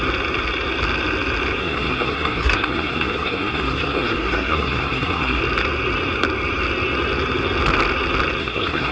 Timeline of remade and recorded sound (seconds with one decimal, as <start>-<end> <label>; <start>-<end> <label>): 0.0-1.6 recorded; 1.6-5.4 remade; 5.4-8.4 recorded; 8.4-8.9 remade